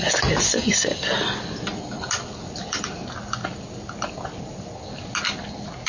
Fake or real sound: real